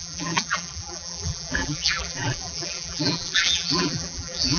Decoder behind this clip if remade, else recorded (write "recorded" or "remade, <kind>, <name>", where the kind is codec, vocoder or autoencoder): remade, vocoder, BigVGAN v2